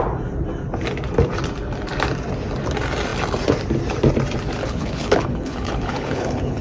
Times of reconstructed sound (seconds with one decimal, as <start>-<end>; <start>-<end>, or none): 4.6-6.6